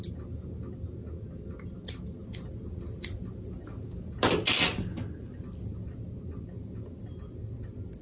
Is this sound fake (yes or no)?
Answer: no